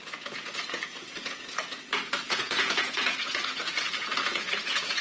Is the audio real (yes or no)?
no